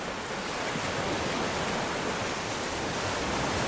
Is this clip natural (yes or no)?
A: yes